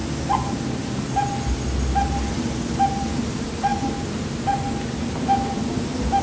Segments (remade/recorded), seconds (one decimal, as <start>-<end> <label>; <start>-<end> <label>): 0.0-6.2 recorded